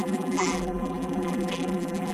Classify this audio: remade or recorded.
remade